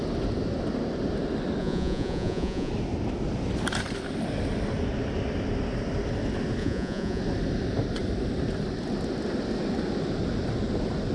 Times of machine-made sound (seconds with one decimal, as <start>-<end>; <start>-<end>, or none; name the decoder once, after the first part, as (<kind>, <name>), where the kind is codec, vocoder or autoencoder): 1.6-2.7 (vocoder, Vocos); 6.6-7.2